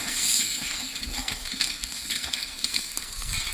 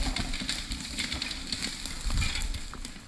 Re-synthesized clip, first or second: first